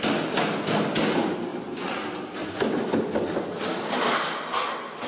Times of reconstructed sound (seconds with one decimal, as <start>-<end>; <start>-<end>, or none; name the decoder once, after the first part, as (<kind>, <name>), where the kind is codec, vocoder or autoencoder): 3.7-4.2 (codec, DAC)